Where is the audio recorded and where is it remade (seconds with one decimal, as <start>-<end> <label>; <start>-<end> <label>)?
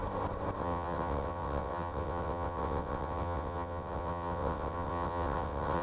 0.0-0.6 recorded; 0.6-5.8 remade